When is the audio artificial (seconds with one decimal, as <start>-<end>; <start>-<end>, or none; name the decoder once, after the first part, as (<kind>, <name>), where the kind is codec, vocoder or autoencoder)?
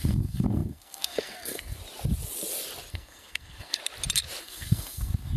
0.0-1.8 (codec, SNAC); 2.9-3.8; 4.4-5.4